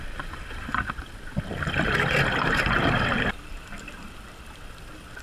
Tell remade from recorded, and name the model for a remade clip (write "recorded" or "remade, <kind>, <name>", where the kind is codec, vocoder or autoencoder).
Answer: remade, vocoder, BigVGAN v2